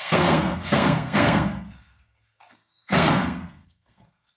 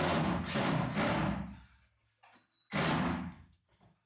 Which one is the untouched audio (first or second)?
second